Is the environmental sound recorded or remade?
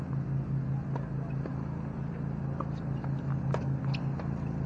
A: recorded